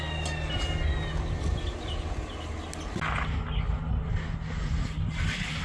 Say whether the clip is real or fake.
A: real